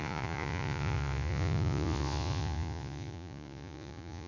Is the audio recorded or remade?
remade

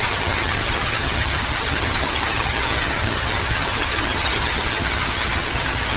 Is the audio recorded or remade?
remade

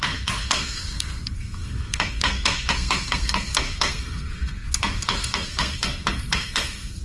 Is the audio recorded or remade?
remade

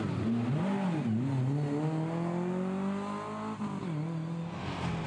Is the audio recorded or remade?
recorded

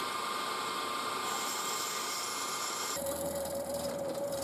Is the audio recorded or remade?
remade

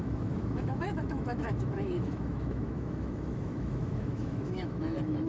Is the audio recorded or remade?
remade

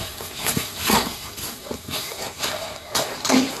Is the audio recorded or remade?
remade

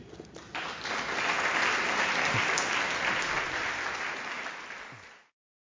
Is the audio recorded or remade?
recorded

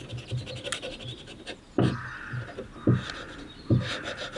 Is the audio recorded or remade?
recorded